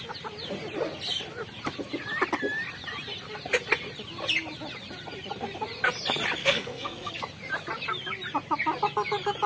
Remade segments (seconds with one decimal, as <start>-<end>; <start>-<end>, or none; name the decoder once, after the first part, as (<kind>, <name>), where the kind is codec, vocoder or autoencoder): 6.4-7.1 (codec, SNAC)